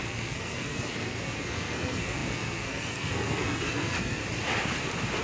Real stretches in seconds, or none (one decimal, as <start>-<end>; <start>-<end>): 4.2-5.2